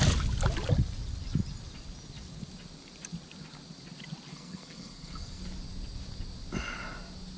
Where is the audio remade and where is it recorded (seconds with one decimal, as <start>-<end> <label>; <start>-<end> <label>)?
0.0-4.3 recorded; 4.3-5.4 remade; 5.4-7.4 recorded